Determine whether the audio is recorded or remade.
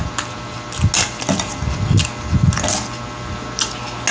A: recorded